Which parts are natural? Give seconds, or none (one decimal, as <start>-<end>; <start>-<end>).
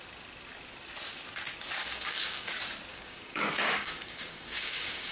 0.0-1.8; 2.5-2.9